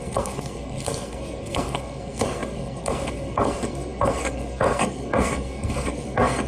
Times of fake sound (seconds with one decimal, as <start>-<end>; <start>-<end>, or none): 0.0-6.5

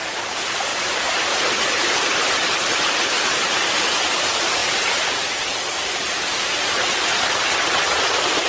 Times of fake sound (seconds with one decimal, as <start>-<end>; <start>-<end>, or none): 0.7-3.4; 4.6-8.5